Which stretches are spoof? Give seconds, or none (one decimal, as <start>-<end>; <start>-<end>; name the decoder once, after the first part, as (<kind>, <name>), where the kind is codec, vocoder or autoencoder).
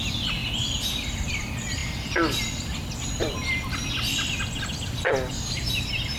none